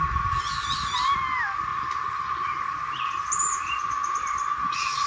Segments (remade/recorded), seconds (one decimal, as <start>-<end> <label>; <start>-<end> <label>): 0.0-1.7 remade; 1.7-2.6 recorded; 2.6-4.0 remade; 4.0-5.1 recorded